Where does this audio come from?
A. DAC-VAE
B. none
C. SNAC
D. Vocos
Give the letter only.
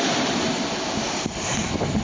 B